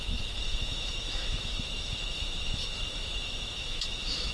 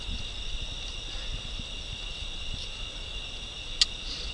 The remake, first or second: first